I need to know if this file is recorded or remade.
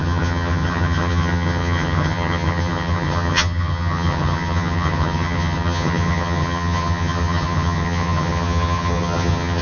remade